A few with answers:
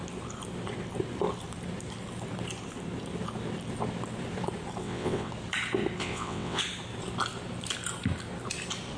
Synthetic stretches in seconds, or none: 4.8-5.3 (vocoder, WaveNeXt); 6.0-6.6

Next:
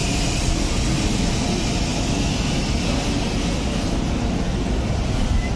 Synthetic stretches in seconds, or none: none

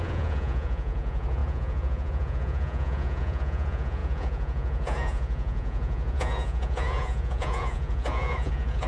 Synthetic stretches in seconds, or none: 0.0-8.9 (vocoder, Vocos)

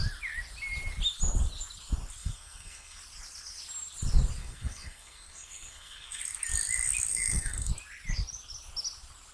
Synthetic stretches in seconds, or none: 2.2-3.0 (codec, SNAC); 4.4-6.2; 7.1-7.7